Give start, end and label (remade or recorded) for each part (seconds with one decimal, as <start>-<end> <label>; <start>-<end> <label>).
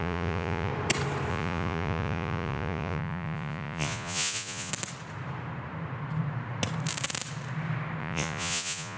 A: 0.0-0.7 remade; 0.7-1.3 recorded; 1.3-4.7 remade; 4.7-8.0 recorded; 8.0-9.0 remade